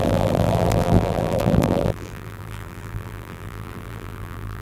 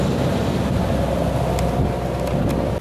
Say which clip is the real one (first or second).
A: second